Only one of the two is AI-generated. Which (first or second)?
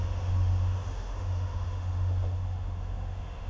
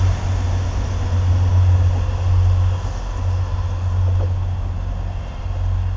first